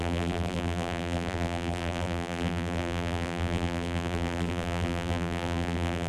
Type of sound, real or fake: fake